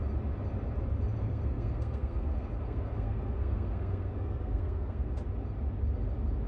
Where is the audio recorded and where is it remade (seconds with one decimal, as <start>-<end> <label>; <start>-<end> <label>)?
0.0-1.2 recorded; 1.2-5.1 remade; 5.1-6.5 recorded